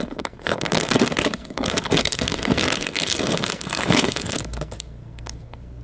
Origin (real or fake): fake